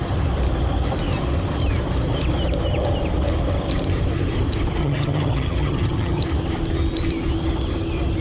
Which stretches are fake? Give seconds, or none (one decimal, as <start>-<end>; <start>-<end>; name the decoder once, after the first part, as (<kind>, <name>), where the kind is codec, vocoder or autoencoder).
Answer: 4.8-6.2 (vocoder, HiFi-GAN)